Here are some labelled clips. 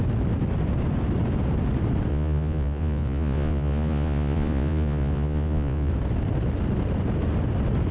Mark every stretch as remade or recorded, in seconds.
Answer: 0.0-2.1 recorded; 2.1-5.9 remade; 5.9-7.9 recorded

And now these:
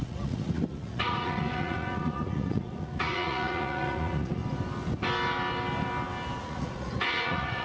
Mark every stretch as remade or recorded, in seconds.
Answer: 0.0-4.4 remade; 4.4-6.4 recorded; 6.4-7.6 remade